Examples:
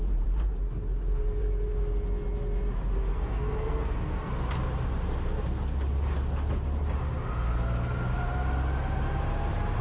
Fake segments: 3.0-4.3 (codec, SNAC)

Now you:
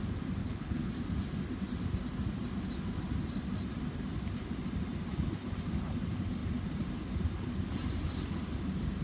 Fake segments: 0.4-0.9 (codec, HILCodec)

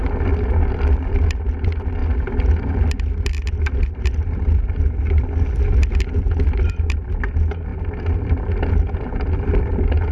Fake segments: none

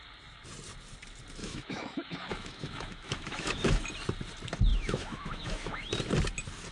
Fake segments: 1.4-3.8 (autoencoder, DAC-VAE); 4.7-5.9

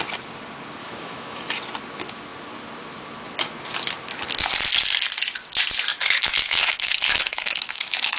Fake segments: 0.8-1.5 (autoencoder, DAC-VAE); 5.9-8.2

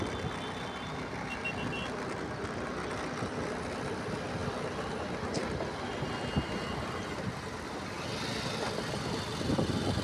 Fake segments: none